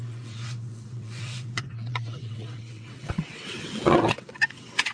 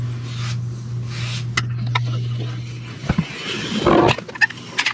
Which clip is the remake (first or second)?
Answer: first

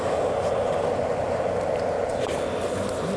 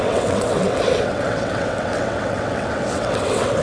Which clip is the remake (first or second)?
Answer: second